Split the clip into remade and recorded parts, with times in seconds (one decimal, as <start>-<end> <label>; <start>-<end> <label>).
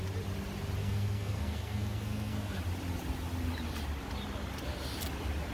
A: 0.0-0.8 recorded; 0.8-2.6 remade; 2.6-5.5 recorded